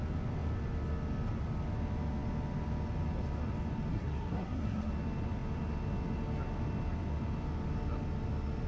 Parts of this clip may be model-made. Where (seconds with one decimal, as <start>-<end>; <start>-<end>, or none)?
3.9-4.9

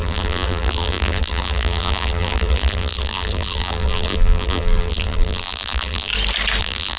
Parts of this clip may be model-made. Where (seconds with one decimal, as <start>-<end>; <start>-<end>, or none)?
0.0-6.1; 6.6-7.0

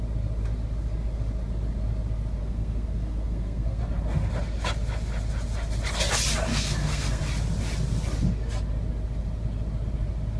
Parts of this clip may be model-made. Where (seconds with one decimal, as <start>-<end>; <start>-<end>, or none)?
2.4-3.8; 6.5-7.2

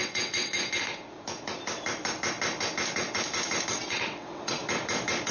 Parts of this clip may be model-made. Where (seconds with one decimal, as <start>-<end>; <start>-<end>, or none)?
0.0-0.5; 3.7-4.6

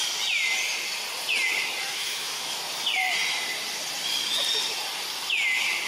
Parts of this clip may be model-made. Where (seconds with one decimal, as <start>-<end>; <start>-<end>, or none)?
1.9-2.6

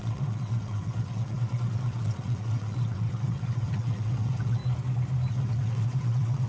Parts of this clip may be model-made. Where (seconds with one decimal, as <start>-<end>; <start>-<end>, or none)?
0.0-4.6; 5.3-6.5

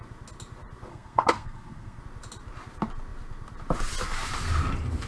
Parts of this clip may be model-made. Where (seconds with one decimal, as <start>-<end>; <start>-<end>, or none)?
0.9-2.0

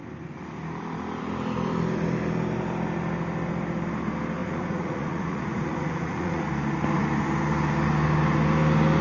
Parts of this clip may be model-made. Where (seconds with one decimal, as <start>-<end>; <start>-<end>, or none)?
4.4-6.4